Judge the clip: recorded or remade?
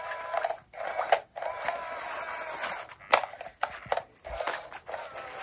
recorded